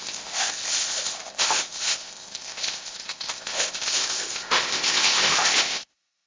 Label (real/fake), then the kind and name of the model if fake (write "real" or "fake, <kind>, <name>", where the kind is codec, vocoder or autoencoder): fake, codec, ZipCodec